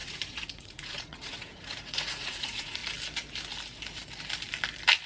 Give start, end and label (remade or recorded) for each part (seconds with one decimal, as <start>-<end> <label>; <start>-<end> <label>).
0.0-2.8 remade; 2.8-5.1 recorded